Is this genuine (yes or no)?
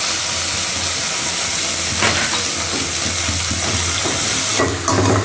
yes